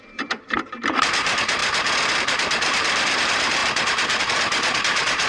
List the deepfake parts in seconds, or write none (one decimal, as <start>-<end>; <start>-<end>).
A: 0.0-1.6; 2.2-3.6; 4.2-5.3